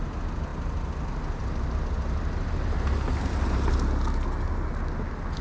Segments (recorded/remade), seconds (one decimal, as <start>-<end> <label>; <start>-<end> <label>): 0.0-5.4 recorded